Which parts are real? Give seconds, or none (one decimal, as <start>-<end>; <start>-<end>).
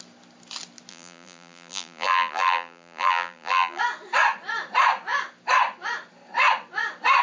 0.0-0.9; 3.8-7.2